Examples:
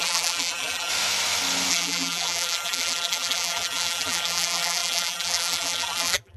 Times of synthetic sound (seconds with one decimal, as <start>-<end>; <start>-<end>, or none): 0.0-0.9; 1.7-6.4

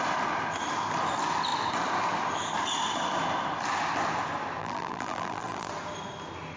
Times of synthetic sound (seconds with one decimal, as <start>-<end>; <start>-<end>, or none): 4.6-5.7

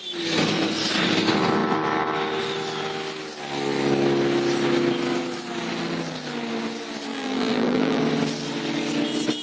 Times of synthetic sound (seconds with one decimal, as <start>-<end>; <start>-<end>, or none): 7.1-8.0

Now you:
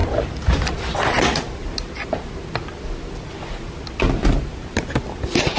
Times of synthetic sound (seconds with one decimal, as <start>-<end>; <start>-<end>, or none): none